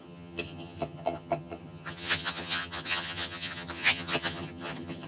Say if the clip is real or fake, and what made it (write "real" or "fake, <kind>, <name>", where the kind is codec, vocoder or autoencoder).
fake, vocoder, HiFi-GAN